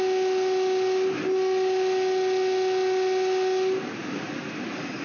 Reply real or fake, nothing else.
real